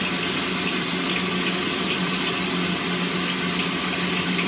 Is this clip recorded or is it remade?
recorded